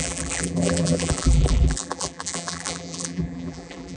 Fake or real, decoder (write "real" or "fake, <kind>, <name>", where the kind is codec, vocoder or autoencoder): fake, vocoder, BigVGAN v2